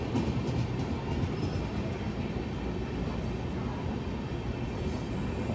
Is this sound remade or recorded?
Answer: recorded